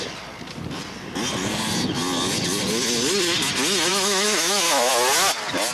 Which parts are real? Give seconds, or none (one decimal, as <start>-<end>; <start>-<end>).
0.0-3.9; 4.9-5.7